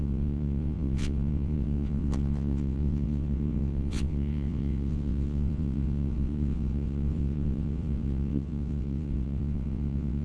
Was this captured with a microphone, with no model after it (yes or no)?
no